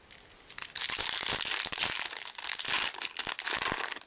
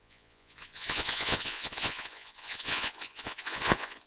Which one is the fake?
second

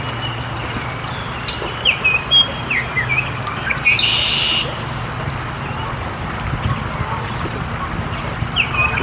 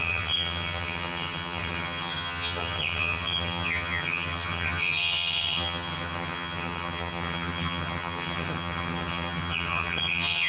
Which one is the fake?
second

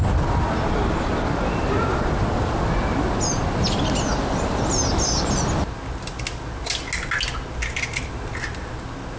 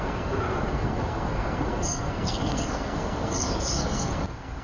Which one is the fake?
second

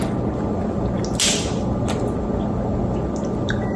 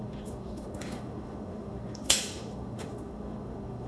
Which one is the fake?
second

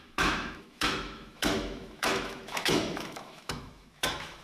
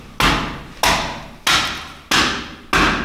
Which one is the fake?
first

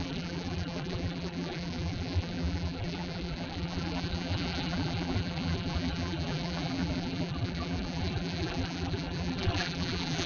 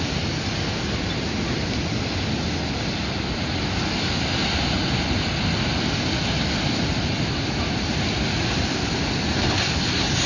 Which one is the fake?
first